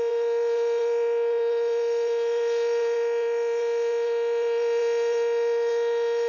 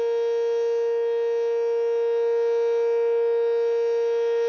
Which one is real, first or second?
second